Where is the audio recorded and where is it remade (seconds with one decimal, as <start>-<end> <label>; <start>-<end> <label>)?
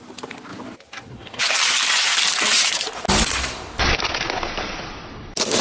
0.0-5.6 recorded